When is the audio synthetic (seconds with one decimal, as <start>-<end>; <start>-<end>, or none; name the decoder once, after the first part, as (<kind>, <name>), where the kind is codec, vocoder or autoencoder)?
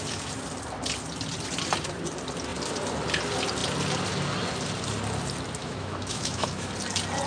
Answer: 5.6-6.7 (autoencoder, DAC-VAE)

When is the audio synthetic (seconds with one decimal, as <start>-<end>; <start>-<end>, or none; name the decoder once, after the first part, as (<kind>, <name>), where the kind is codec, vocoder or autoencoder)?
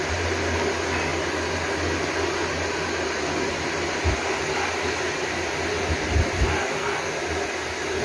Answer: 6.6-7.1 (codec, SNAC)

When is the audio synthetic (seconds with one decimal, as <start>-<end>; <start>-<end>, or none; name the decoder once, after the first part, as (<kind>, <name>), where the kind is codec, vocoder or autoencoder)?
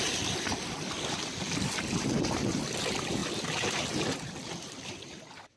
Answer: none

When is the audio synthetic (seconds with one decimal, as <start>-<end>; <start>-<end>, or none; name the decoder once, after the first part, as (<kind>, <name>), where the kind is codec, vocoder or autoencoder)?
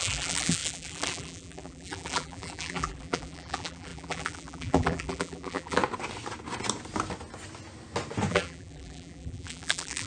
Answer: 0.0-5.8 (vocoder, BigVGAN v2); 8.3-10.1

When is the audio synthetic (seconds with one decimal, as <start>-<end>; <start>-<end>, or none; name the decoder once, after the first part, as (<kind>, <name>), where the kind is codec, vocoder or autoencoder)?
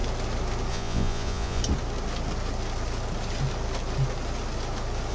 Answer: 0.7-1.6 (vocoder, Vocos)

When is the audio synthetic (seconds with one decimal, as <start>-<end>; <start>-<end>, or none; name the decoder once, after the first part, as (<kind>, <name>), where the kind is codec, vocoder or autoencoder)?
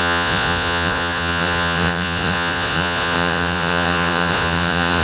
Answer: 0.0-5.0 (vocoder, Vocos)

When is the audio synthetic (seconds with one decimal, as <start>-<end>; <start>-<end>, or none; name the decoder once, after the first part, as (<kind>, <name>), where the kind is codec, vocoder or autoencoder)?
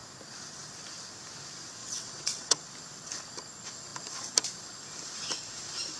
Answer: 1.8-2.6 (vocoder, WaveNeXt)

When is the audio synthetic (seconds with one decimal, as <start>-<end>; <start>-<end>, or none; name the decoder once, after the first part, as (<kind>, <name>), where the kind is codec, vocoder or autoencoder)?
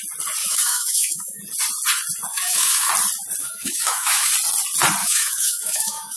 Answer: 0.4-1.4 (autoencoder, DAC-VAE); 2.3-2.9; 3.4-4.3; 5.0-6.2